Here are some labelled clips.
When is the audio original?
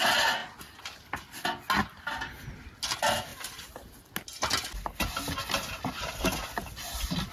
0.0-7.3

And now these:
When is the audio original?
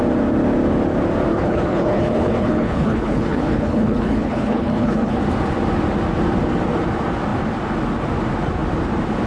0.0-1.3; 5.2-9.3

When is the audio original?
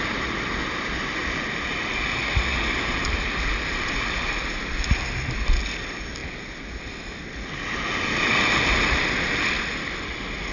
0.0-1.2; 4.7-10.5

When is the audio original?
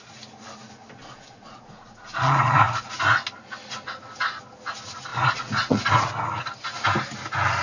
0.0-1.0; 2.9-5.1; 6.1-7.6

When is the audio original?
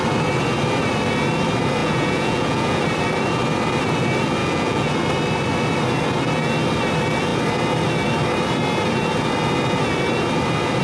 0.0-1.8; 2.8-4.4; 5.0-10.8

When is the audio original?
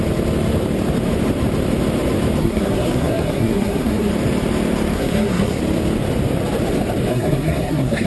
0.0-2.4; 4.1-4.9; 5.6-7.1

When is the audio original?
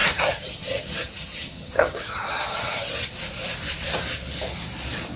3.1-5.2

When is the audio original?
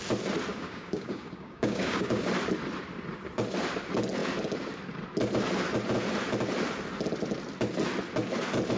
0.0-0.5; 2.3-8.8